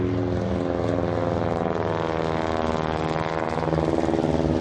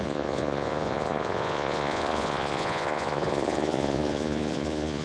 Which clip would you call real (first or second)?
first